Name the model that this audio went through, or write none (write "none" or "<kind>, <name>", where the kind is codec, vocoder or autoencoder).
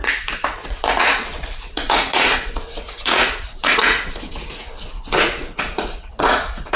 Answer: vocoder, Vocos